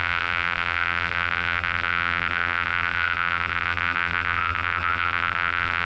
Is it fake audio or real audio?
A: fake